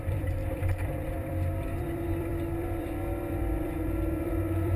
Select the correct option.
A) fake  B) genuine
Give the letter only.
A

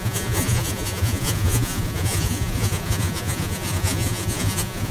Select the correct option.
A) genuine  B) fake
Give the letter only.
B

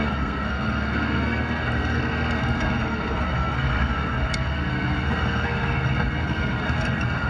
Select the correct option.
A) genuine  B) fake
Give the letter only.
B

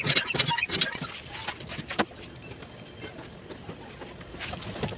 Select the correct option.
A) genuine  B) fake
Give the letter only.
A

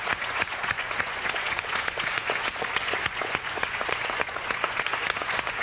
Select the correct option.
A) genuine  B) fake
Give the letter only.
B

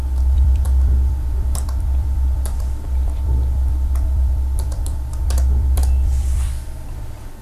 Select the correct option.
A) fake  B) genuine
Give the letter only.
A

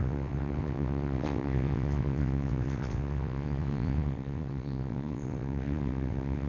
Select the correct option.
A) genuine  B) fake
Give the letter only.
B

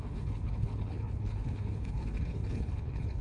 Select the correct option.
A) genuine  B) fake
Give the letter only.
B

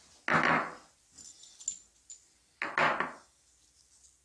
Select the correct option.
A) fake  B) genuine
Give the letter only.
B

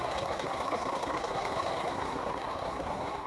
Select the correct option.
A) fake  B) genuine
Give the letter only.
A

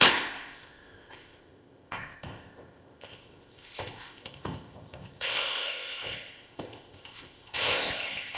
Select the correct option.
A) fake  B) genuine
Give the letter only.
A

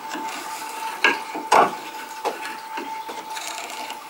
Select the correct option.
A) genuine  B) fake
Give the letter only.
A